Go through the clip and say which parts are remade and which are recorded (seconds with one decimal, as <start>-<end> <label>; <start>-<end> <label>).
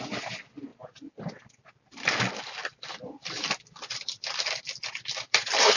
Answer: 0.0-2.6 recorded; 2.6-5.8 remade